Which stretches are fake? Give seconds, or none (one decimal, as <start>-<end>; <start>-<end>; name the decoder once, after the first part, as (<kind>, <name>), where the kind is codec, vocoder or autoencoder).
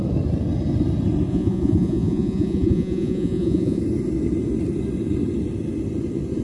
1.3-3.8 (vocoder, Vocos)